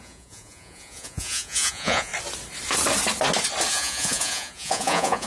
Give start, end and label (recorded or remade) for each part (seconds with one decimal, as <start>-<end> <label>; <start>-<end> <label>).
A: 0.0-2.1 remade; 2.1-3.7 recorded; 3.7-5.3 remade